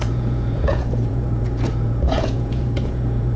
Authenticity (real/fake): fake